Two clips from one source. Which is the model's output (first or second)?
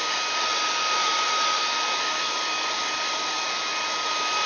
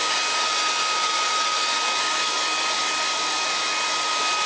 first